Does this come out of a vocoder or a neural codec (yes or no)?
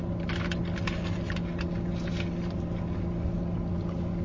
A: no